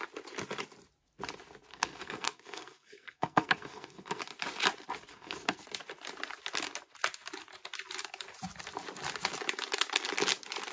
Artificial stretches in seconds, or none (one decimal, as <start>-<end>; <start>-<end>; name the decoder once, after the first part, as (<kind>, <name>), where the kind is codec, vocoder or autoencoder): 1.7-4.2 (codec, SNAC); 5.1-5.6